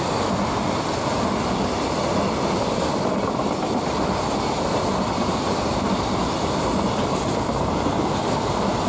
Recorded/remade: recorded